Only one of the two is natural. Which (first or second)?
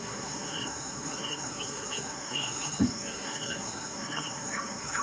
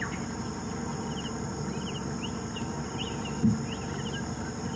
second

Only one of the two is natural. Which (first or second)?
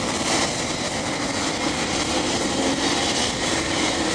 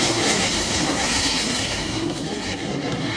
first